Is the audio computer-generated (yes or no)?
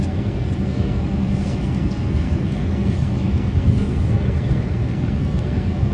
yes